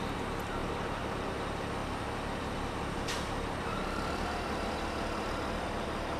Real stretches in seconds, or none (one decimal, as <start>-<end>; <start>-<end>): 0.0-0.6; 1.3-1.8; 5.3-6.2